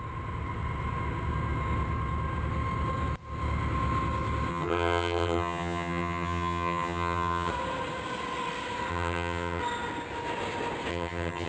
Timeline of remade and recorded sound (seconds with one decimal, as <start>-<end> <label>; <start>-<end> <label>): 0.0-4.5 recorded; 4.5-7.5 remade; 7.5-8.9 recorded; 8.9-9.6 remade; 9.6-10.9 recorded; 10.9-11.5 remade